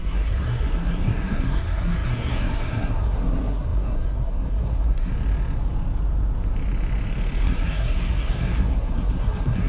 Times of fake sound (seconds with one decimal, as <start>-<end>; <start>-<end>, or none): 0.0-5.1; 7.4-9.7